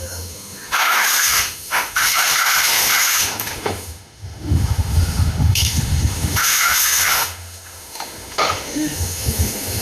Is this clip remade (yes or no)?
yes